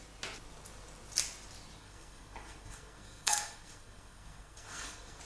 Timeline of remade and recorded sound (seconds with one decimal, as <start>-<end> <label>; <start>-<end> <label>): 0.0-1.8 recorded; 1.8-5.2 remade